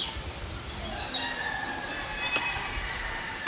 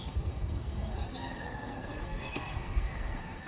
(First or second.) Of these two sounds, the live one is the first